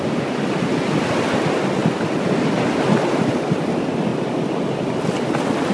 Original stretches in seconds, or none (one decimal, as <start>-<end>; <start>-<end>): 0.0-4.1; 5.0-5.7